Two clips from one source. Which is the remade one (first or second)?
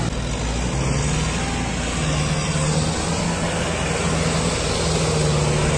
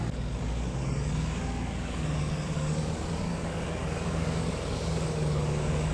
second